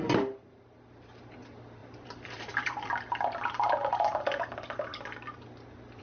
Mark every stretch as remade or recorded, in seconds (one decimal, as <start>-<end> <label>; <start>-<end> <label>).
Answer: 0.0-1.8 recorded; 1.8-2.9 remade; 2.9-3.9 recorded; 3.9-4.5 remade; 4.5-6.0 recorded